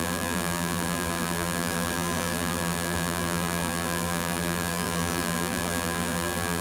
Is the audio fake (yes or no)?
yes